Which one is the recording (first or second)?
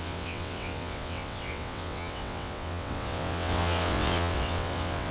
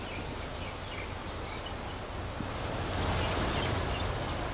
second